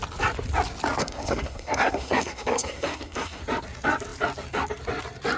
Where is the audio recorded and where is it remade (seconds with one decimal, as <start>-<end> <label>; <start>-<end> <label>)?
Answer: 0.0-1.0 recorded; 1.0-3.4 remade; 3.4-5.4 recorded